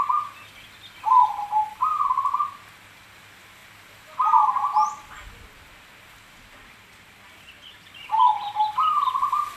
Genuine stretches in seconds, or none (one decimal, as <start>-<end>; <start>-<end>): 0.0-9.6